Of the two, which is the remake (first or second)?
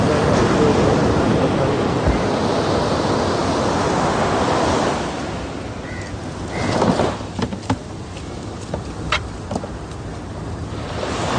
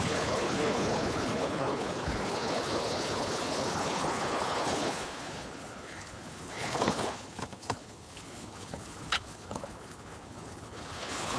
second